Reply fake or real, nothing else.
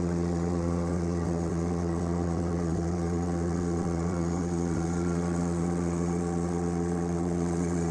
fake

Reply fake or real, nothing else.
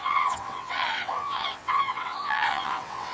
fake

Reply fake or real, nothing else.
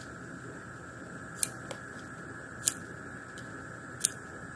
real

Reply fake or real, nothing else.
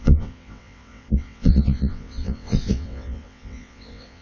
fake